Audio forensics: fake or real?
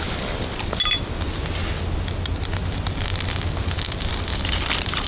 real